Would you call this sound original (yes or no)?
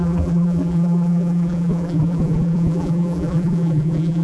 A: no